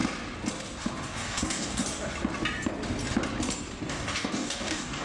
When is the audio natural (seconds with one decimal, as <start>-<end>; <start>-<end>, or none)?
0.0-1.0; 1.8-3.9